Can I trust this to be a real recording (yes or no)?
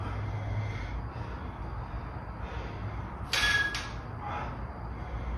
yes